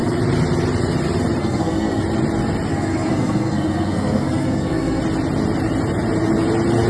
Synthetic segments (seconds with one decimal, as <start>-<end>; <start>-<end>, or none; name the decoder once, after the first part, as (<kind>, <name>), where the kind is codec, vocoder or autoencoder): 1.4-2.0 (codec, SNAC); 2.7-5.0